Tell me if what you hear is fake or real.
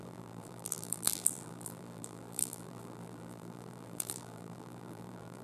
fake